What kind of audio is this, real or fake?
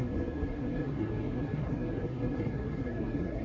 fake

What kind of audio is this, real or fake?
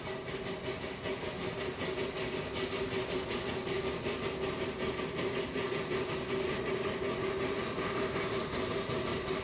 real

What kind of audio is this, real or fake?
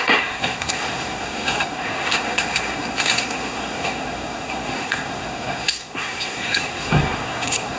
fake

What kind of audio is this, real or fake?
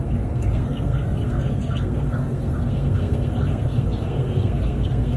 fake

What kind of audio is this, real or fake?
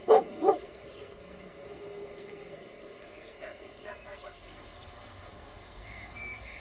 fake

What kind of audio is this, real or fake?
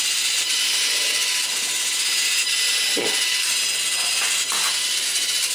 real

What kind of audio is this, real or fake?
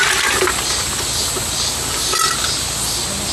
real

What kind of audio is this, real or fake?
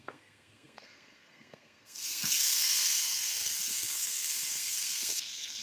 fake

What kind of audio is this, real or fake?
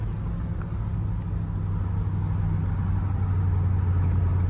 real